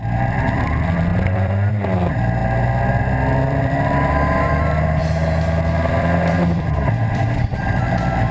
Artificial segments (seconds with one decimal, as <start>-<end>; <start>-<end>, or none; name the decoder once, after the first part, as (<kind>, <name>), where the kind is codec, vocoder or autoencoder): 0.0-2.4 (vocoder, BigVGAN v2); 2.9-5.0; 5.9-8.3